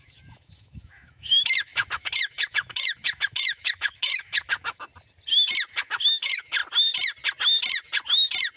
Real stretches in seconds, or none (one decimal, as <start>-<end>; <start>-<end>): 4.9-5.8; 6.6-8.6